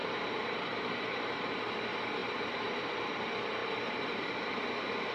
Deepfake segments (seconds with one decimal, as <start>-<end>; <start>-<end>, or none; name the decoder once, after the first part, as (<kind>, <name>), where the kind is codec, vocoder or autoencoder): 0.0-1.6 (vocoder, BigVGAN v2); 2.2-2.9; 3.6-4.2

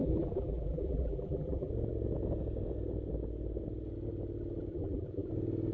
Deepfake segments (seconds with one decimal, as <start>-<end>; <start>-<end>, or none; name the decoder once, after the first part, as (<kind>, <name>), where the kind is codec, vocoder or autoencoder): 0.0-1.7 (vocoder, BigVGAN v2); 4.7-5.3